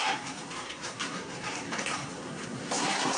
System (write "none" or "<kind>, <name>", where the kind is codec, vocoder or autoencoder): codec, SNAC